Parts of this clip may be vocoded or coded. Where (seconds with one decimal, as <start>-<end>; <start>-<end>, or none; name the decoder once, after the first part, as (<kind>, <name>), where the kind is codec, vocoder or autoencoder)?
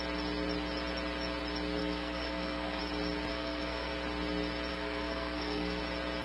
1.8-2.8 (codec, SNAC); 3.3-3.9; 4.7-5.8